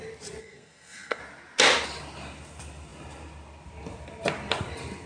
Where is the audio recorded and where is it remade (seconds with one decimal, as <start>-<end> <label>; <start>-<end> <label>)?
0.0-0.4 recorded; 0.4-1.2 remade; 1.2-5.1 recorded